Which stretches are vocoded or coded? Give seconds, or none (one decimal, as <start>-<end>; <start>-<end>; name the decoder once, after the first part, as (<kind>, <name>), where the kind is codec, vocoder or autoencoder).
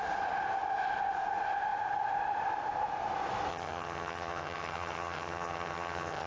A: 3.5-6.3 (vocoder, HiFi-GAN)